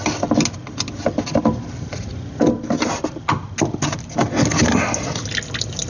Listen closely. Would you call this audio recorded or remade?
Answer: recorded